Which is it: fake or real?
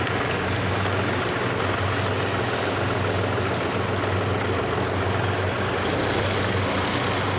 real